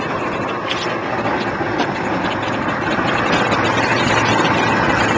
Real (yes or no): yes